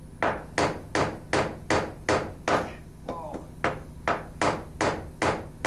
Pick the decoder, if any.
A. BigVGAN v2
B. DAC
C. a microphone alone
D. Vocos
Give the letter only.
C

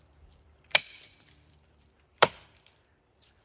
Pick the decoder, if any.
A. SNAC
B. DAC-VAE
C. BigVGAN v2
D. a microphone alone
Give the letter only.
C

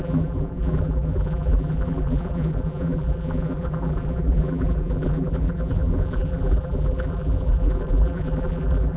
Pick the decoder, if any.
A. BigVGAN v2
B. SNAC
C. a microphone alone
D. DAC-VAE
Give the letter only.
A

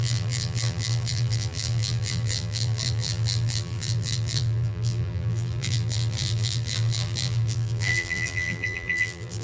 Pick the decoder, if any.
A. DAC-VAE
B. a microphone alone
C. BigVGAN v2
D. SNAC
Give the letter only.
C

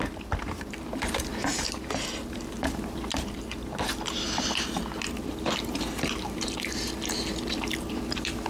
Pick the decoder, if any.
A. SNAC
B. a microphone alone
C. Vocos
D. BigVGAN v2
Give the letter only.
D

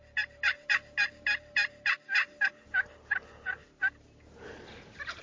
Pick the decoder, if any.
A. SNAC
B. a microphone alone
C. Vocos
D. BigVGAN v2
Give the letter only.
D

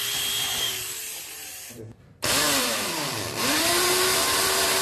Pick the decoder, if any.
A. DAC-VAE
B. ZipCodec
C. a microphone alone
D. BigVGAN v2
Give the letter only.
D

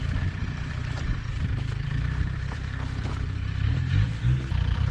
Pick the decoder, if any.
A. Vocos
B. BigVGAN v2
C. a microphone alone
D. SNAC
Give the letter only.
B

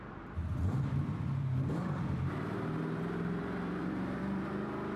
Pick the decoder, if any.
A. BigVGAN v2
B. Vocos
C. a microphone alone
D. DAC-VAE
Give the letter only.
A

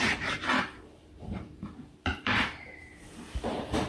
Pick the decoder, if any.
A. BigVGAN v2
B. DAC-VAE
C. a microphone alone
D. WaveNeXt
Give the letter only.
A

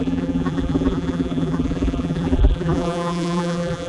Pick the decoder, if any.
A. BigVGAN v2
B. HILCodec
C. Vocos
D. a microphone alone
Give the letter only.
A